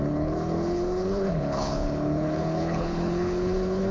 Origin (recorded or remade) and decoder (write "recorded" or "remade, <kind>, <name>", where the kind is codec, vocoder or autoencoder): remade, codec, HILCodec